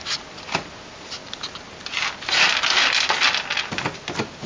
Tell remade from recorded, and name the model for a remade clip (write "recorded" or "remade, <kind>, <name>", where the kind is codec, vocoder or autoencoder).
recorded